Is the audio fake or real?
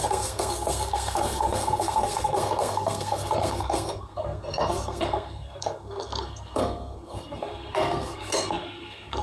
fake